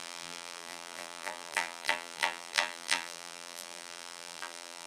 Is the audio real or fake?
fake